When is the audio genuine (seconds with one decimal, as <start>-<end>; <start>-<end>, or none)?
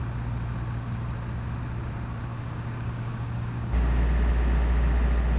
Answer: 0.0-2.3; 4.0-5.4